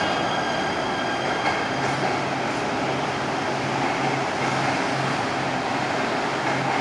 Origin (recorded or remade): recorded